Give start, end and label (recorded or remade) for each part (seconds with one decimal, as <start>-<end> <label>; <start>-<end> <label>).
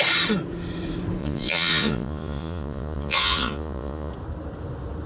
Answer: 0.0-1.2 recorded; 1.2-4.1 remade; 4.1-5.1 recorded